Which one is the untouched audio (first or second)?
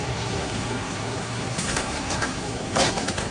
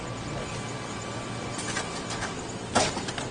second